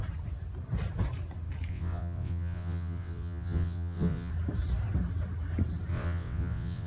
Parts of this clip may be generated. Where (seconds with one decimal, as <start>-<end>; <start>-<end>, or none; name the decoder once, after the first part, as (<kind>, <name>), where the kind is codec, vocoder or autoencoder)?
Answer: 1.7-4.3 (vocoder, WaveNeXt); 5.9-6.9